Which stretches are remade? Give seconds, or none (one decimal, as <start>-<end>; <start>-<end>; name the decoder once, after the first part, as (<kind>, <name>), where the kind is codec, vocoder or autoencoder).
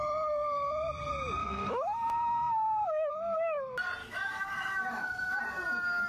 1.4-3.1 (autoencoder, DAC-VAE); 4.0-5.4